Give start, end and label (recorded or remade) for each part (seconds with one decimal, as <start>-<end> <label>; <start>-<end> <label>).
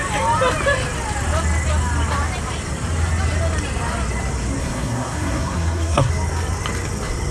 0.0-4.6 recorded; 4.6-6.1 remade; 6.1-7.3 recorded